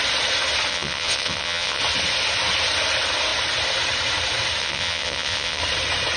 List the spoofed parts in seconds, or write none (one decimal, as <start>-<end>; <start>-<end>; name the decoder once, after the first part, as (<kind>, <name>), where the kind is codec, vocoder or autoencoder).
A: 0.7-1.8 (vocoder, WaveNeXt); 4.6-5.6